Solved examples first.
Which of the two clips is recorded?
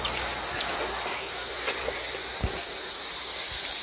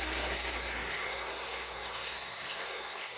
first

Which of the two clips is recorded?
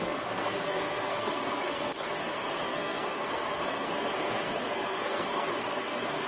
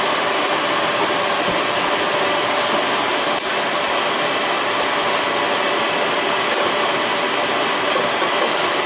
second